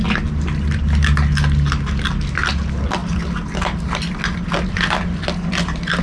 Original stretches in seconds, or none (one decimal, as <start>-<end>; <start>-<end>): 0.0-6.0